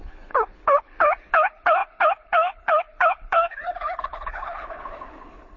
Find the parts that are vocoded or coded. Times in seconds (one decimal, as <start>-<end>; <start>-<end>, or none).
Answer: 0.0-5.6

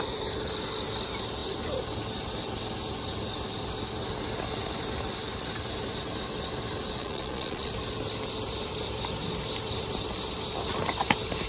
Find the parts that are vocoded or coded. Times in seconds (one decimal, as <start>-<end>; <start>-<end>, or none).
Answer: 7.0-7.7

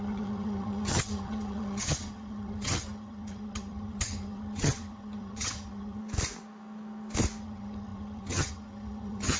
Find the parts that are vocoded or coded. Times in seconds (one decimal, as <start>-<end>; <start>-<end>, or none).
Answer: 0.0-6.0; 7.4-9.4